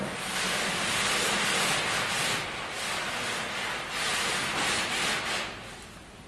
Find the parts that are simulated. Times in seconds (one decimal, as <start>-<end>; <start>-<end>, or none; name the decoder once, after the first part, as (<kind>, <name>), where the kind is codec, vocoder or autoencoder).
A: 4.1-5.2 (vocoder, BigVGAN v2)